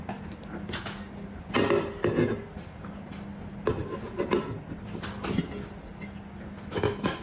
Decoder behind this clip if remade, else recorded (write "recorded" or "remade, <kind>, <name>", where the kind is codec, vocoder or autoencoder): recorded